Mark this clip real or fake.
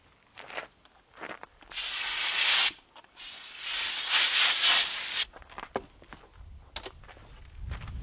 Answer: real